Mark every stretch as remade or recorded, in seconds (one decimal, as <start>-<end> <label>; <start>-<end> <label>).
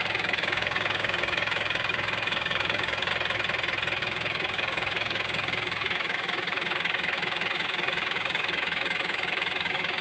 0.0-3.1 remade; 3.1-4.0 recorded; 4.0-10.0 remade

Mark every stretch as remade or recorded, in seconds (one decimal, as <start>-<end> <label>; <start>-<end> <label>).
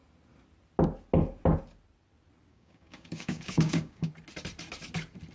0.0-2.5 recorded; 2.5-4.1 remade; 4.1-5.3 recorded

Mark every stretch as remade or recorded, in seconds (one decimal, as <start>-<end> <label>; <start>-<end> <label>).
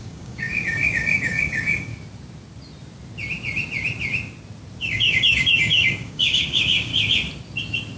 0.0-1.9 remade; 1.9-4.8 recorded; 4.8-6.9 remade; 6.9-8.0 recorded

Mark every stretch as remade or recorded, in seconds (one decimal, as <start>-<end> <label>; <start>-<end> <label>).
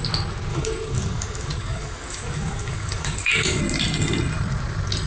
0.0-0.5 recorded; 0.5-3.6 remade; 3.6-5.1 recorded